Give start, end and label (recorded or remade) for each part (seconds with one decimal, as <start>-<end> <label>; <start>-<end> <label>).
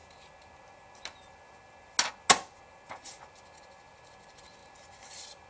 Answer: 0.0-5.5 recorded